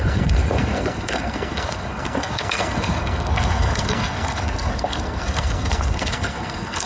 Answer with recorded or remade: remade